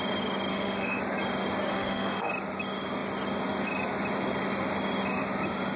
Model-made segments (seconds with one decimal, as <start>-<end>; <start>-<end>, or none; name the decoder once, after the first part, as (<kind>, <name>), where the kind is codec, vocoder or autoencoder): 0.5-1.0 (autoencoder, DAC-VAE); 1.7-2.3